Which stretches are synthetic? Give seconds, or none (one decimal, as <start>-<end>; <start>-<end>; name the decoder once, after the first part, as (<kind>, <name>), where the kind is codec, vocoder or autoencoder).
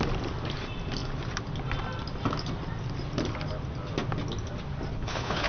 4.9-5.5 (codec, HILCodec)